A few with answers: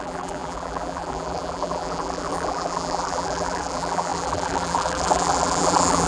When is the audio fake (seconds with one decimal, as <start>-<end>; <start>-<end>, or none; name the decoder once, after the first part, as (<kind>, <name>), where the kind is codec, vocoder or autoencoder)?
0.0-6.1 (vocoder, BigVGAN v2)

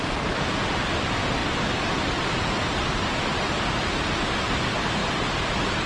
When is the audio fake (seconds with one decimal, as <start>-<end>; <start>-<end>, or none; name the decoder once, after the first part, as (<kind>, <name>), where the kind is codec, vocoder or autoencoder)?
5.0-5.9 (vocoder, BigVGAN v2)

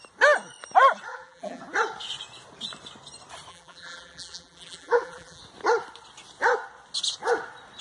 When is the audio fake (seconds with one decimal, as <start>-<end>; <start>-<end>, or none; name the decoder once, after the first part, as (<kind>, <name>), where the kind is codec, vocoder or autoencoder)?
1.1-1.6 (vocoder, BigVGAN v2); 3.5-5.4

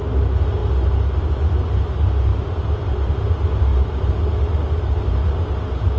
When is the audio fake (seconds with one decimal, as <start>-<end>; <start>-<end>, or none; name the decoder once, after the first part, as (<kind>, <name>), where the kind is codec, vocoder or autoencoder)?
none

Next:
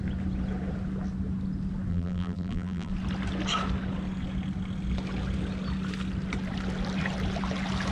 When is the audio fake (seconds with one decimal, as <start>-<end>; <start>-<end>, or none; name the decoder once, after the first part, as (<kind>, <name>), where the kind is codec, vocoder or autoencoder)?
1.9-2.9 (vocoder, BigVGAN v2)

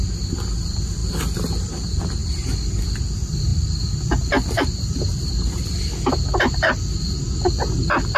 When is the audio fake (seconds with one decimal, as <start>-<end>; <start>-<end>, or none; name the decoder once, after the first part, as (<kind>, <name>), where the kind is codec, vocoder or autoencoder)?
0.0-8.2 (vocoder, BigVGAN v2)